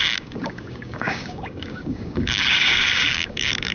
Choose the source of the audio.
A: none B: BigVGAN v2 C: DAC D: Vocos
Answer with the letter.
C